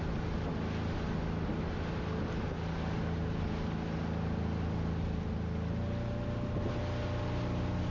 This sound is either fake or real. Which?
real